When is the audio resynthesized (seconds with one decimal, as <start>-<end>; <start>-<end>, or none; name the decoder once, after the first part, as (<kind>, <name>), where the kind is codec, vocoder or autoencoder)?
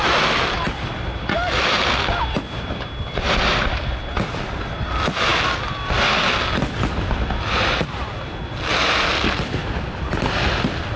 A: none